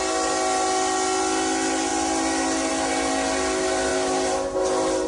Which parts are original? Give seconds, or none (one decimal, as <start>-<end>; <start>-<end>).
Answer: 0.0-5.1